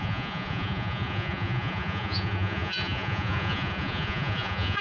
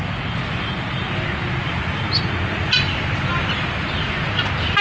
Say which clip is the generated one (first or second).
first